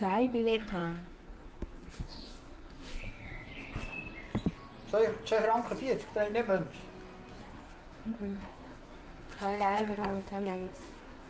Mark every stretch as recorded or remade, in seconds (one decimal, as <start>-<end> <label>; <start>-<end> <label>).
0.0-3.5 remade; 3.5-7.5 recorded; 7.5-11.3 remade